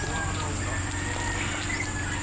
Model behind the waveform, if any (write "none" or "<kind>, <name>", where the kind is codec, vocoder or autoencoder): none